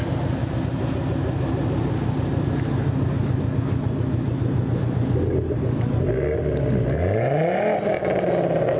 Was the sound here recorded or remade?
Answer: recorded